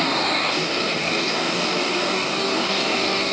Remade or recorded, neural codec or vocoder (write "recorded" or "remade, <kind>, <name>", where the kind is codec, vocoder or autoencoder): remade, codec, DAC